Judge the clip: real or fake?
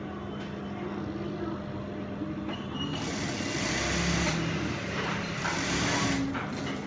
real